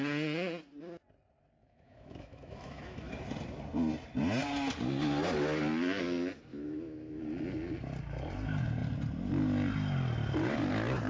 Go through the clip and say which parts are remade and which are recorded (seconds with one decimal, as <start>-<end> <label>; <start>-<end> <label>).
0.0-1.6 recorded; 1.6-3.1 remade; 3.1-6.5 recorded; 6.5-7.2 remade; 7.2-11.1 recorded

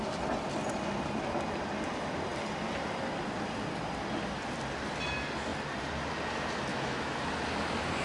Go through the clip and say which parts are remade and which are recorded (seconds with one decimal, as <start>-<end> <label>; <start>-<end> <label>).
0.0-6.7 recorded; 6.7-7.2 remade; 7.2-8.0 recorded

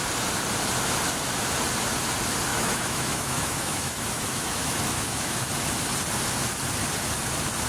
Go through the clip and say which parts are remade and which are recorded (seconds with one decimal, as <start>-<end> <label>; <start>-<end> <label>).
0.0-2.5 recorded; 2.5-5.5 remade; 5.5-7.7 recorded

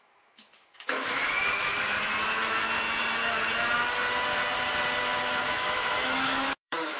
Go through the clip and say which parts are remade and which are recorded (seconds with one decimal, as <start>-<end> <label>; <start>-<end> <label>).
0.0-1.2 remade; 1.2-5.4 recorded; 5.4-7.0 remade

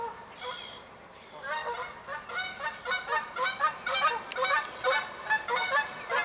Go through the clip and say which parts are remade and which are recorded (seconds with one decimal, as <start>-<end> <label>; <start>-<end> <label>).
0.0-6.2 recorded

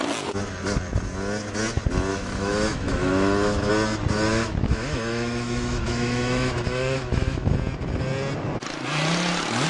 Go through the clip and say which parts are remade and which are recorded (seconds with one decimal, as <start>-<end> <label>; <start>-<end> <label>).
0.0-2.1 recorded; 2.1-3.7 remade; 3.7-4.3 recorded; 4.3-7.5 remade; 7.5-9.7 recorded

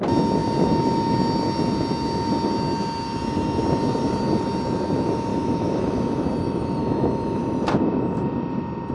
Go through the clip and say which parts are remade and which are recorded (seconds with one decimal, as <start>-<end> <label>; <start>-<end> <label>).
0.0-5.3 recorded; 5.3-6.3 remade; 6.3-6.8 recorded; 6.8-7.4 remade; 7.4-8.9 recorded

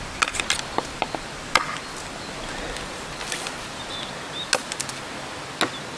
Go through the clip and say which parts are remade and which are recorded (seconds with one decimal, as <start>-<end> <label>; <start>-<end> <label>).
0.0-6.0 recorded